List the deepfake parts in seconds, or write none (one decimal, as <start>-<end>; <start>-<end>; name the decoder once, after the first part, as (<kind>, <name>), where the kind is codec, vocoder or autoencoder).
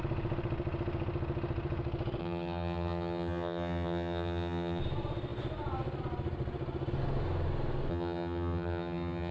2.2-4.8 (vocoder, HiFi-GAN); 7.9-9.3